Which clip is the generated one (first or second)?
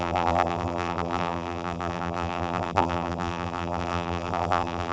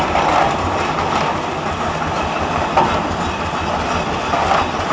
first